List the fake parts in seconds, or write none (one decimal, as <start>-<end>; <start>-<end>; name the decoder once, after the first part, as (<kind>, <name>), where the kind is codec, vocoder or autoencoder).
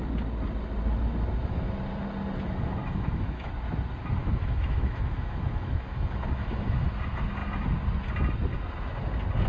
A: 2.8-3.5 (autoencoder, DAC-VAE); 4.2-6.8